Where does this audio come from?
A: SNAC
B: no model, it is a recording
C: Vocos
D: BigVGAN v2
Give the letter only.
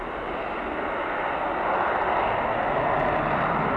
B